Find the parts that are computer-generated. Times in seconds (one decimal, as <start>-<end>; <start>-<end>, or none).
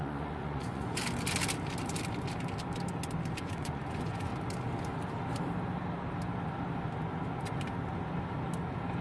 0.0-1.0; 3.4-4.3